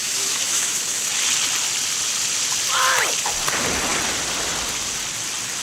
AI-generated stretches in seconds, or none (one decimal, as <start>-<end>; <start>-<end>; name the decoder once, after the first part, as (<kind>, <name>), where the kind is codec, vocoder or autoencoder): 0.0-1.1 (autoencoder, DAC-VAE)